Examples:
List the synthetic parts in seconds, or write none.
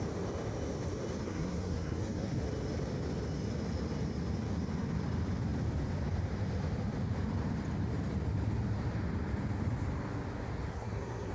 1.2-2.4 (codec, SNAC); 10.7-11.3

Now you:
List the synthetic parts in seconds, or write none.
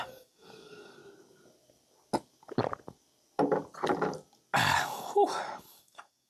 0.0-1.0 (codec, DAC); 4.8-6.3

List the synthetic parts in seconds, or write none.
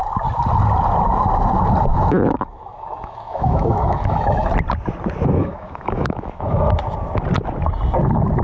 1.9-4.5 (autoencoder, DAC-VAE); 5.4-6.6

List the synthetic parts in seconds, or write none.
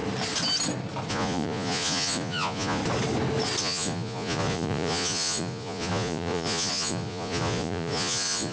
1.1-2.8 (vocoder, Vocos); 3.6-8.5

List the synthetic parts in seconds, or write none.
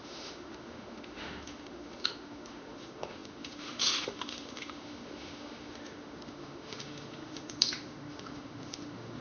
0.0-9.2 (autoencoder, DAC-VAE)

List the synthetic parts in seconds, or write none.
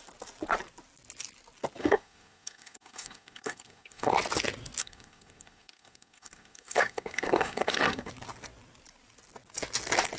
1.8-4.1 (codec, SNAC); 4.8-8.1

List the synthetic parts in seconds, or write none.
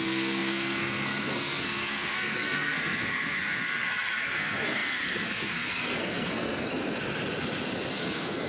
0.0-6.7 (codec, SNAC); 7.9-8.5